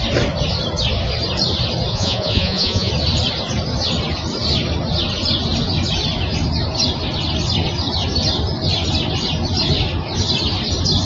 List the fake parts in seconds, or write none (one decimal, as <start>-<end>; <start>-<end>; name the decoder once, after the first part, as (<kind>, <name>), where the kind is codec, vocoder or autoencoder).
1.9-2.9 (vocoder, Vocos)